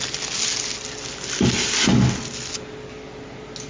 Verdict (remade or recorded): recorded